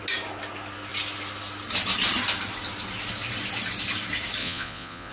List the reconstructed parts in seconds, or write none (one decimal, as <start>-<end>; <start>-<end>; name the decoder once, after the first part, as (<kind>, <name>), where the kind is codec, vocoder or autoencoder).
4.4-5.1 (vocoder, Vocos)